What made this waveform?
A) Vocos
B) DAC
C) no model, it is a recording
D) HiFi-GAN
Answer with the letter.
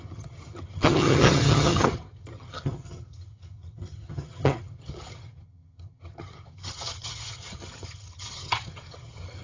D